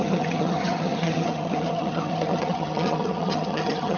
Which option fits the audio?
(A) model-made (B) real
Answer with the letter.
A